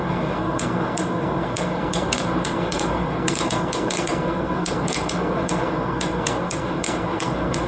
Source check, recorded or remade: remade